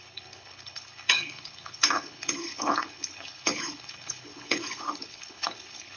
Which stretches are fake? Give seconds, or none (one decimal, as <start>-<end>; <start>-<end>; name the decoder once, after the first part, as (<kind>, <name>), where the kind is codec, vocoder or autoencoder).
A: 0.0-6.0 (codec, HILCodec)